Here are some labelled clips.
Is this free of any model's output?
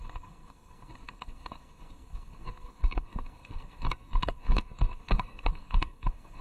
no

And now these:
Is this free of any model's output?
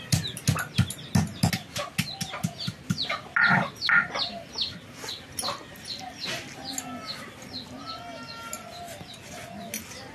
yes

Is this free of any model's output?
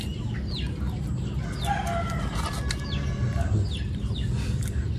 yes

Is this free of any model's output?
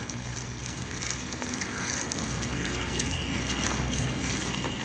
no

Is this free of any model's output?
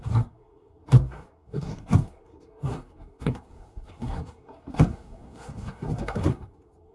no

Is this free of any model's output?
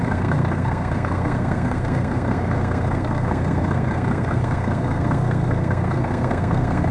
no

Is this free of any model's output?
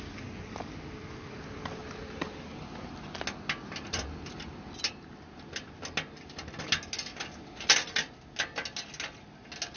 yes